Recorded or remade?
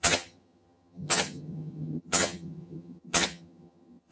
remade